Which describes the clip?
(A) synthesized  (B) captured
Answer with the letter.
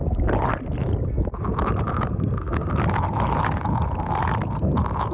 B